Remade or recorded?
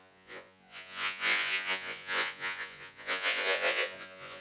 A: remade